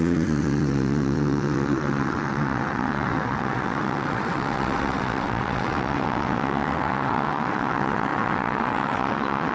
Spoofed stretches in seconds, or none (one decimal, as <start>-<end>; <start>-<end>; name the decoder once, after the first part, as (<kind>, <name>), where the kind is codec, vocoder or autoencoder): 0.0-9.5 (vocoder, WaveNeXt)